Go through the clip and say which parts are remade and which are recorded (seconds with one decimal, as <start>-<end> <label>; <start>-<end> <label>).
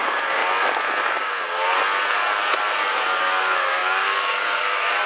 0.0-0.4 remade; 0.4-1.0 recorded; 1.0-1.7 remade; 1.7-3.2 recorded; 3.2-5.1 remade